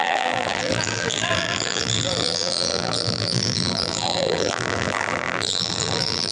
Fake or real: fake